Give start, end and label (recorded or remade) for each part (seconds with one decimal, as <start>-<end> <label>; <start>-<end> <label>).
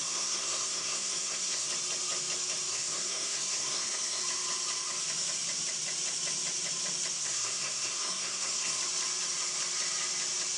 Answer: 0.0-1.7 remade; 1.7-2.7 recorded; 2.7-4.2 remade; 4.2-7.2 recorded; 7.2-8.8 remade; 8.8-10.6 recorded